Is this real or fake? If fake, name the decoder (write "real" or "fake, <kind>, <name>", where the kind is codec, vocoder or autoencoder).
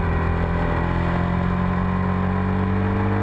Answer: real